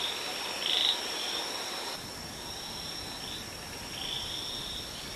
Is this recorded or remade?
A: recorded